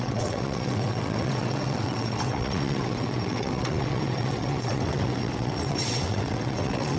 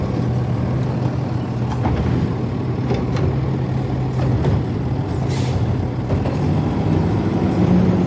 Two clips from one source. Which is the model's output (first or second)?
first